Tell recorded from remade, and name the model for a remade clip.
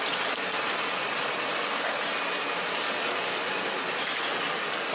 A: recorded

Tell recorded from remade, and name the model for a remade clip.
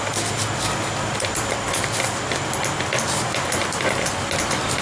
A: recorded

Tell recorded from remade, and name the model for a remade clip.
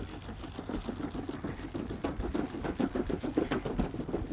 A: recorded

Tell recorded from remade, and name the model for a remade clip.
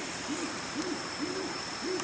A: remade, vocoder, BigVGAN v2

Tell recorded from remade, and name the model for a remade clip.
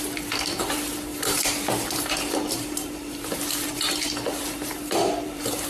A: remade, vocoder, BigVGAN v2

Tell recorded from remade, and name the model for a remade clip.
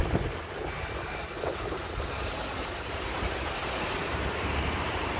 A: remade, vocoder, BigVGAN v2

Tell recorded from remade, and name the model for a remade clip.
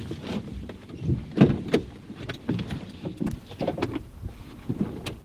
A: recorded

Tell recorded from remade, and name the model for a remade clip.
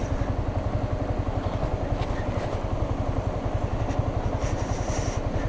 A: recorded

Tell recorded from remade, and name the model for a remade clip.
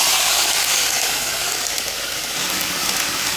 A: remade, codec, DAC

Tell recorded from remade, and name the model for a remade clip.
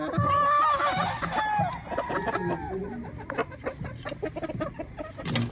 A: recorded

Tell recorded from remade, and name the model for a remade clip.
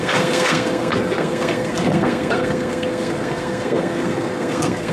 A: remade, codec, SNAC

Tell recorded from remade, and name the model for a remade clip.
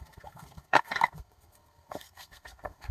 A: remade, codec, SNAC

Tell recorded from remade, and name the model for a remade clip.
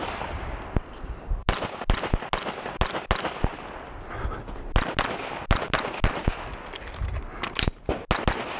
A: recorded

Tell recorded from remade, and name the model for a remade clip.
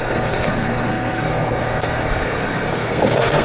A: remade, codec, SNAC